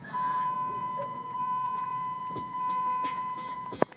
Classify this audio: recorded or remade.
remade